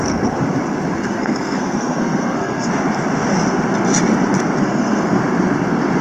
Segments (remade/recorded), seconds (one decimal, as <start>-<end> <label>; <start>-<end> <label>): 0.0-1.0 recorded; 1.0-2.7 remade; 2.7-4.6 recorded; 4.6-5.2 remade; 5.2-6.0 recorded

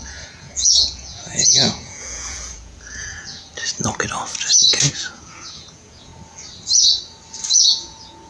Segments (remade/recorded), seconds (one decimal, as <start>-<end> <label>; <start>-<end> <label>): 0.0-3.5 remade; 3.5-4.9 recorded; 4.9-6.1 remade; 6.1-7.5 recorded; 7.5-8.3 remade

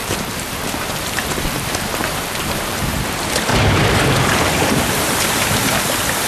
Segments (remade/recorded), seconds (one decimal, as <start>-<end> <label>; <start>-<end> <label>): 0.0-2.9 remade; 2.9-3.5 recorded; 3.5-5.8 remade; 5.8-6.3 recorded

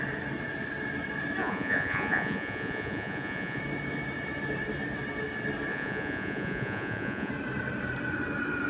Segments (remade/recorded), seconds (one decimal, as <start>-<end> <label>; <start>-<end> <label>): 0.0-1.4 recorded; 1.4-3.6 remade; 3.6-5.7 recorded; 5.7-7.3 remade; 7.3-8.7 recorded